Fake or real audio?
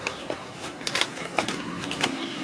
fake